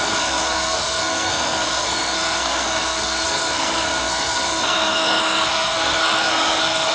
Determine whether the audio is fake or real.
fake